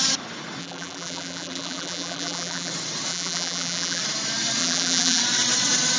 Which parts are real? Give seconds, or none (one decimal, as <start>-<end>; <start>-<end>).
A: 0.0-0.6; 2.7-3.1; 4.0-4.6; 5.2-6.0